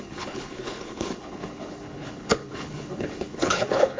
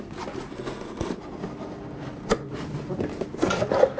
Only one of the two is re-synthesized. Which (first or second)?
first